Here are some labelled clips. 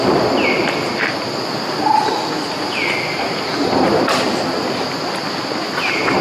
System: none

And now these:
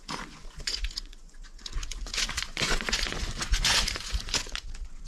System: vocoder, Vocos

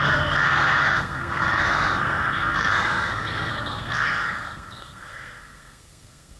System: codec, SNAC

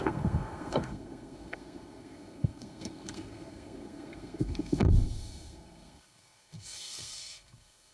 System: codec, SNAC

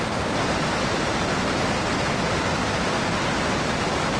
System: none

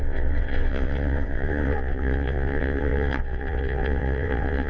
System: vocoder, WaveNeXt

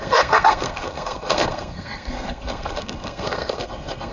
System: codec, SNAC